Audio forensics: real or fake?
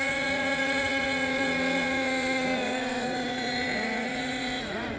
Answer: fake